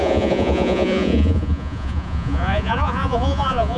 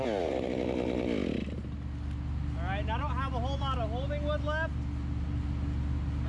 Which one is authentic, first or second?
second